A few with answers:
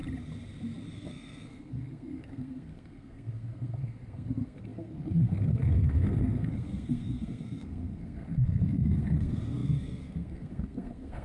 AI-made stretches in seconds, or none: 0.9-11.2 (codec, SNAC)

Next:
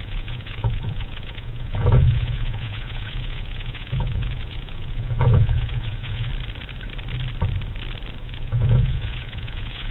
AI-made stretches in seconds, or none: 0.0-6.3 (vocoder, Vocos); 8.2-9.9